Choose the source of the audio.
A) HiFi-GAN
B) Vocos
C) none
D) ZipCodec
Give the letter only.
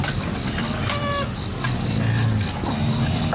C